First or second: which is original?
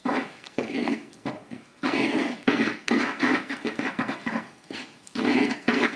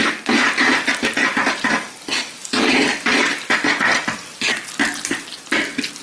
second